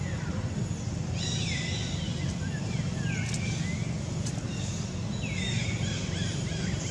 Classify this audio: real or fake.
real